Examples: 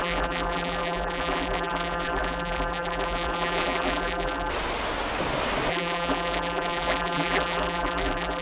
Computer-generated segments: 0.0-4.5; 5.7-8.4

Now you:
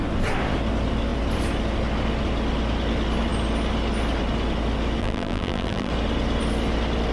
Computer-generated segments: 5.0-5.9

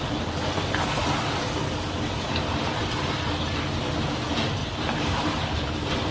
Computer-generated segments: 4.6-6.1

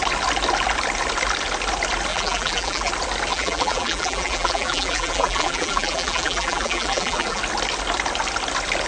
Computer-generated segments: 2.1-2.9; 3.3-7.4

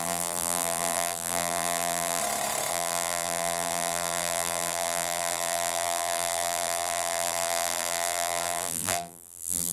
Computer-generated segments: 0.0-2.2; 2.7-9.7